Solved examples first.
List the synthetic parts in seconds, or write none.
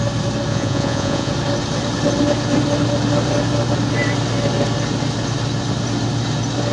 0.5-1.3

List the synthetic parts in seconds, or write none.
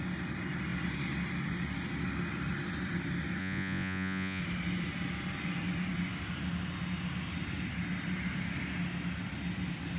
3.4-4.4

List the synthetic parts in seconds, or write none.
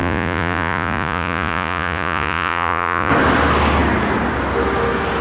0.0-3.1